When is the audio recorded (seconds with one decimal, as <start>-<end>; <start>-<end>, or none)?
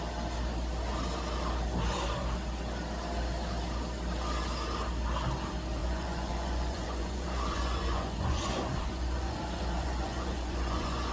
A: 0.0-5.8